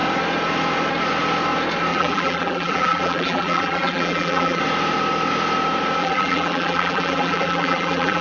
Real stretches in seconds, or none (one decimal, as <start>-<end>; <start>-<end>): 0.0-1.9; 4.6-6.0